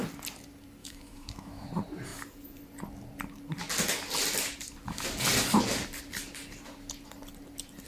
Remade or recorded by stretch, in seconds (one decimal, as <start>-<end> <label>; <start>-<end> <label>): 0.0-0.8 recorded; 0.8-1.7 remade; 1.7-7.9 recorded